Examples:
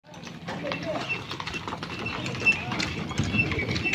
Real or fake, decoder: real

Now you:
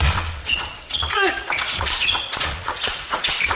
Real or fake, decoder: fake, vocoder, Vocos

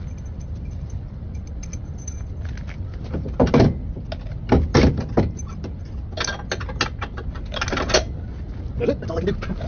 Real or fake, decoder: real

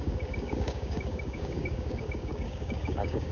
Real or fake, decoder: fake, codec, DAC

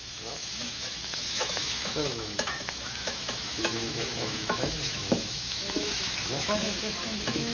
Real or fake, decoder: fake, autoencoder, DAC-VAE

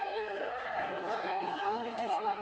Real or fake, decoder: fake, codec, SNAC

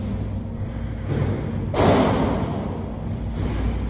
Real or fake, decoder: real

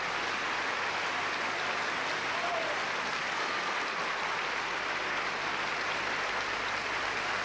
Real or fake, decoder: real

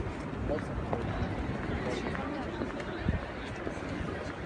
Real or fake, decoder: real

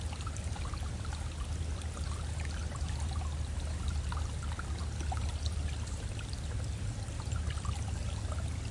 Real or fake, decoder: real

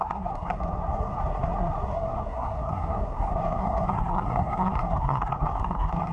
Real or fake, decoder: fake, codec, SNAC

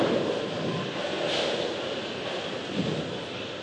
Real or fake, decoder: real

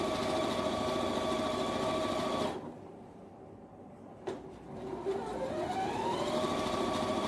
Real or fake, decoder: real